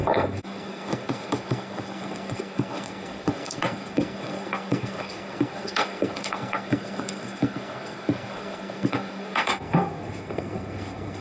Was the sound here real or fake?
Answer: fake